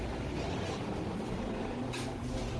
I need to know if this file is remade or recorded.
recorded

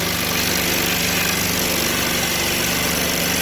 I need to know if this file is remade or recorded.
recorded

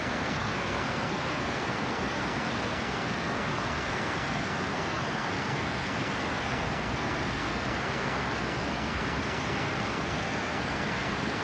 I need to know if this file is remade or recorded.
remade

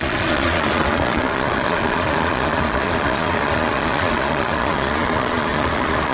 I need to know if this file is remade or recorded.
remade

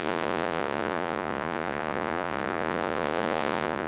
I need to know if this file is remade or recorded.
remade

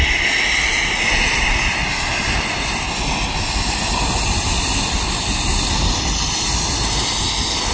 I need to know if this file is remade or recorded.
recorded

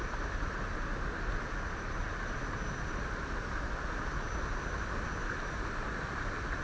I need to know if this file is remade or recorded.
recorded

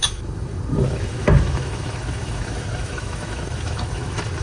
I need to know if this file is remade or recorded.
remade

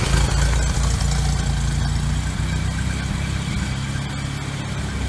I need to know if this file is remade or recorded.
recorded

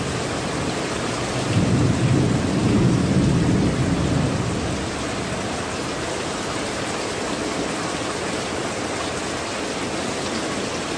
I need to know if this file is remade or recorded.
recorded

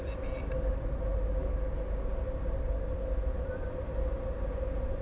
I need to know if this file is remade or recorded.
recorded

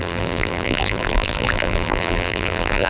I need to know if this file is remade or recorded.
remade